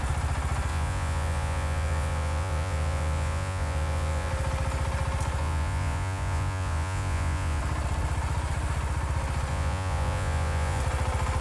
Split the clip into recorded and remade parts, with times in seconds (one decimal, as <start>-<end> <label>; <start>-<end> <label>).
0.0-0.7 recorded; 0.7-4.3 remade; 4.3-5.4 recorded; 5.4-7.6 remade; 7.6-9.5 recorded; 9.5-10.8 remade; 10.8-11.4 recorded